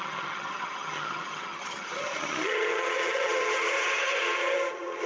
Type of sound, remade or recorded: remade